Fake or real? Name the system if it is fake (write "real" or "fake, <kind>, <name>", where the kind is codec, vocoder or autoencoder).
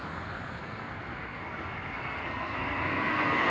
fake, codec, SNAC